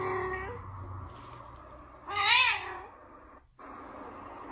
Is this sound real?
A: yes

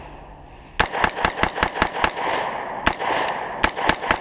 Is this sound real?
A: yes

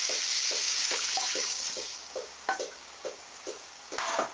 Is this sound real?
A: no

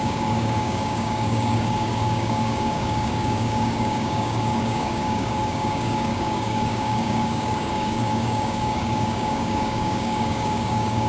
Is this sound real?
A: no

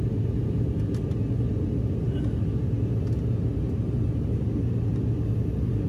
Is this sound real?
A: yes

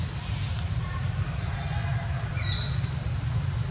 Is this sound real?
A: yes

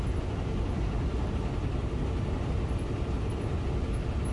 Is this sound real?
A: yes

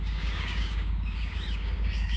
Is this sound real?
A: no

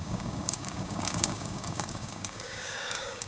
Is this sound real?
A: no